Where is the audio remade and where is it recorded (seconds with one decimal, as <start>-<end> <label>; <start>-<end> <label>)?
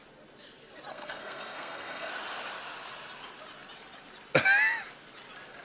0.0-0.9 recorded; 0.9-2.1 remade; 2.1-5.6 recorded